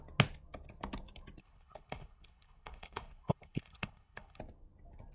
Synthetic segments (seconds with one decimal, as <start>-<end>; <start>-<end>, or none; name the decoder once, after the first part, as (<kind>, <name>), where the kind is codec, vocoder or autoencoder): 1.4-4.4 (codec, HILCodec)